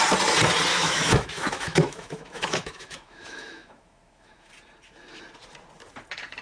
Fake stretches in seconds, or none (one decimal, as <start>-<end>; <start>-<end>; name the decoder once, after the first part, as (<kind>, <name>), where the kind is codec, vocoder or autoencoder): 0.7-4.5 (autoencoder, DAC-VAE)